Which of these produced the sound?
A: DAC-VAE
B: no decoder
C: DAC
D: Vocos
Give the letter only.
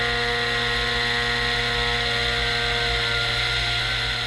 B